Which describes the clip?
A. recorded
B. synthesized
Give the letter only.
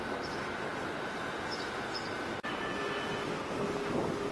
A